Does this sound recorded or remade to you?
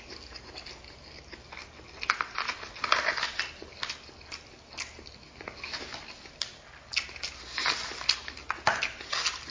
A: recorded